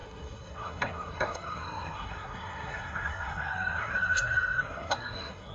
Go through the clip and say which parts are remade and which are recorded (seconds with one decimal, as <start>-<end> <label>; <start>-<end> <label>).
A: 0.0-5.5 remade